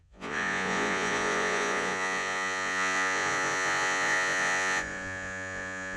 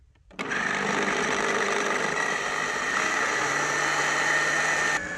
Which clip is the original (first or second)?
second